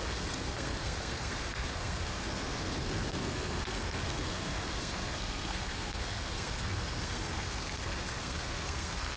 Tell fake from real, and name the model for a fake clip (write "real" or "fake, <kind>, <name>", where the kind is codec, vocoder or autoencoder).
fake, codec, SNAC